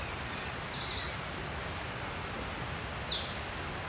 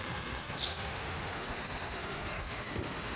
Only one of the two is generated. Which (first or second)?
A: second